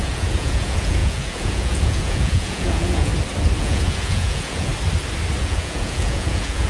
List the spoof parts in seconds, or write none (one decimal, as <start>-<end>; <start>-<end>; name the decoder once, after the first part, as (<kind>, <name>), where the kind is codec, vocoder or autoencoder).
0.0-3.1 (vocoder, Vocos); 3.6-4.7; 5.4-6.7